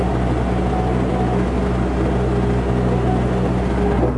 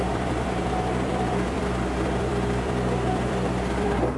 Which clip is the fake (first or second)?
second